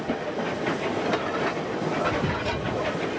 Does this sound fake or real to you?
real